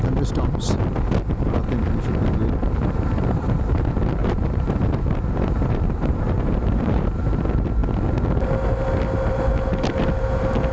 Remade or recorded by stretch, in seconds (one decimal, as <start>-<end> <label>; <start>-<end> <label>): 0.0-2.6 recorded; 2.6-3.8 remade; 3.8-4.2 recorded; 4.2-7.2 remade; 7.2-10.7 recorded